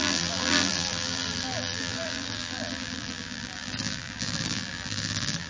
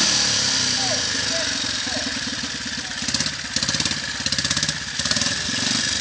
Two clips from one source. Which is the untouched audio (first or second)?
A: second